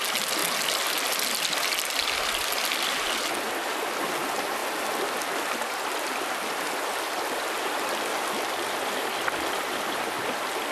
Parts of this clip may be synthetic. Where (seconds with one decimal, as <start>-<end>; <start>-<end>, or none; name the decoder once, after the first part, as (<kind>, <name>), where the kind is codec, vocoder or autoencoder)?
none